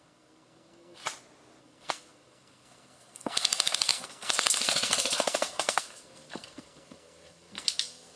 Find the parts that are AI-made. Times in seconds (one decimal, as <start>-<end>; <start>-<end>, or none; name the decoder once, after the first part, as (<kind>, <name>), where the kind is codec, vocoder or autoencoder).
0.0-1.0 (codec, SNAC); 1.6-8.2